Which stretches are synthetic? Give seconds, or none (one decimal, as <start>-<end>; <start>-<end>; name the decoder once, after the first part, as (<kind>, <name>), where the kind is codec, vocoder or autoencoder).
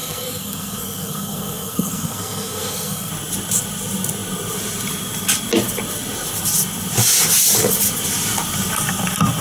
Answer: 0.0-3.1 (codec, SNAC)